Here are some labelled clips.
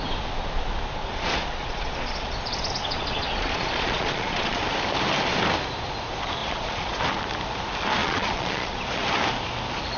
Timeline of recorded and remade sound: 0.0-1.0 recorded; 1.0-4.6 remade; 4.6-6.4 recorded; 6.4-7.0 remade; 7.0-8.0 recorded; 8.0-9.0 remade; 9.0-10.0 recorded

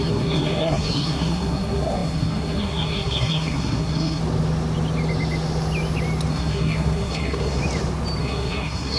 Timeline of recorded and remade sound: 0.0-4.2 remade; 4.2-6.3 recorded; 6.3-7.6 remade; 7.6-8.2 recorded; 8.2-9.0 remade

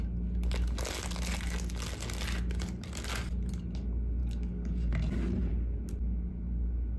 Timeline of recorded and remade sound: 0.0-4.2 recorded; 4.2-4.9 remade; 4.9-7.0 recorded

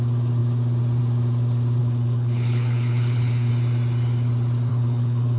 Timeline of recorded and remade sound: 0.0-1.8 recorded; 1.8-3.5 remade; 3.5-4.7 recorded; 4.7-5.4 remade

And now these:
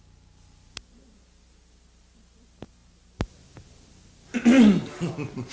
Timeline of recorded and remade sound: 0.0-5.5 recorded

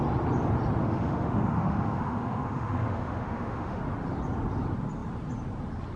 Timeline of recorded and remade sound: 0.0-0.8 recorded; 0.8-3.8 remade; 3.8-6.0 recorded

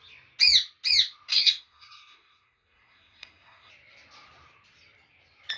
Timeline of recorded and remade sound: 0.0-1.3 recorded; 1.3-3.7 remade; 3.7-5.6 recorded

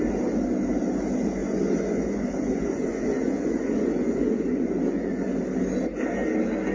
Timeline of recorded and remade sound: 0.0-1.4 recorded; 1.4-5.4 remade; 5.4-6.7 recorded